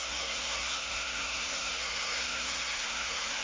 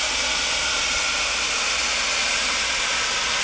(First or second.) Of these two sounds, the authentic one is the second